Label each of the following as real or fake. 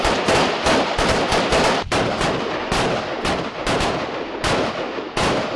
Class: real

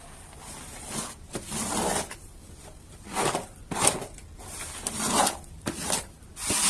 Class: real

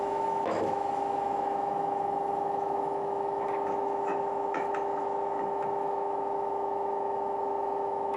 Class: fake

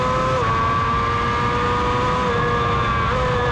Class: real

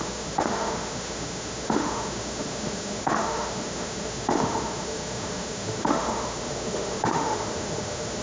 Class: fake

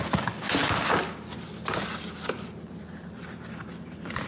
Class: real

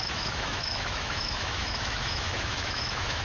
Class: fake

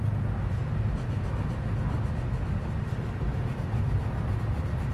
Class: real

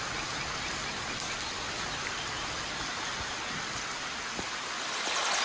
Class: real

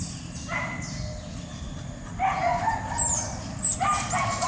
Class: real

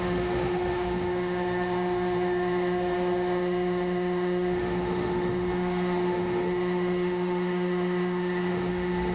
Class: fake